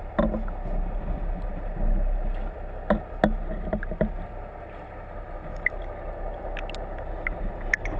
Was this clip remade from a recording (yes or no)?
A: no